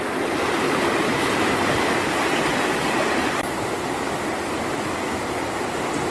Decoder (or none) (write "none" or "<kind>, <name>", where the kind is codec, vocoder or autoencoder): none